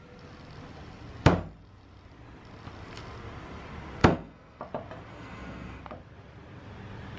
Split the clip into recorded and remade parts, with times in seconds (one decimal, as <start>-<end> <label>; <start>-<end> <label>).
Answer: 0.0-4.0 recorded; 4.0-4.6 remade; 4.6-5.1 recorded; 5.1-5.8 remade; 5.8-7.2 recorded